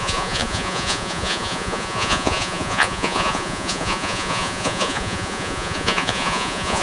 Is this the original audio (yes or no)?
no